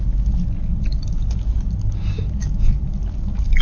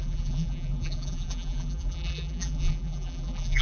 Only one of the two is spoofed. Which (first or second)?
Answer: second